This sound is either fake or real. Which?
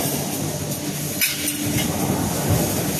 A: real